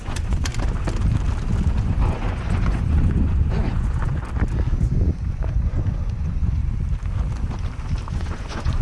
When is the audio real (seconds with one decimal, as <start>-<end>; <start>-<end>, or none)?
0.5-1.8; 4.2-4.8; 6.6-8.1